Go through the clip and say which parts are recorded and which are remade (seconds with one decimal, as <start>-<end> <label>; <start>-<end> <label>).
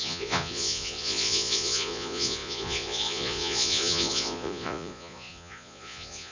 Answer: 0.0-6.3 remade